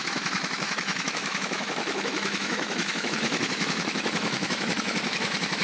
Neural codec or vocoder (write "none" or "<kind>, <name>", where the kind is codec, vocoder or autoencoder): autoencoder, DAC-VAE